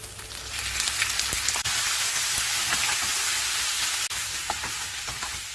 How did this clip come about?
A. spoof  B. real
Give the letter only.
B